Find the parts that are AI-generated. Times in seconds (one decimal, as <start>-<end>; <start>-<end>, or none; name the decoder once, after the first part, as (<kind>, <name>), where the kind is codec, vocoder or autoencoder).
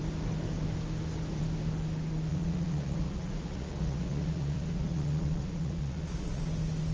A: 2.3-6.4 (vocoder, Vocos)